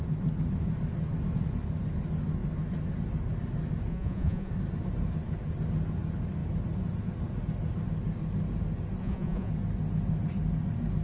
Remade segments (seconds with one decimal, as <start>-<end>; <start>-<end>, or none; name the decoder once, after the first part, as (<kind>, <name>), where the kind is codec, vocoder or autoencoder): 3.9-4.5 (vocoder, Vocos); 9.0-9.5